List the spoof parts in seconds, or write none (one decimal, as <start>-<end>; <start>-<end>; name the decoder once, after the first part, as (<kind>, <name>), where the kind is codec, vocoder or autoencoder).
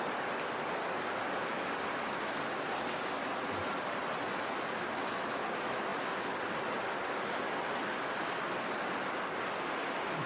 none